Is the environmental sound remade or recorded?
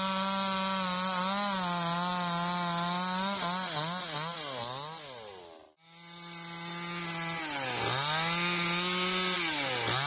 recorded